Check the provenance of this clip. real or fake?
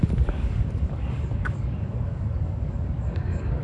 fake